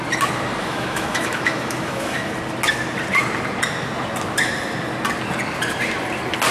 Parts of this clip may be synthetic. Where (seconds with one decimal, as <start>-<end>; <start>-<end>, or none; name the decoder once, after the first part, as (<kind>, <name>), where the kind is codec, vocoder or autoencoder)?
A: 0.6-2.3 (autoencoder, DAC-VAE)